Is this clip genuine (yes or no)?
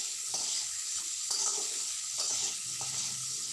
no